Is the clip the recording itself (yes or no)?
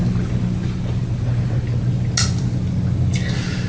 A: yes